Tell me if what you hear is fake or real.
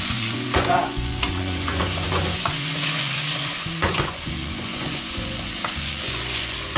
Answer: fake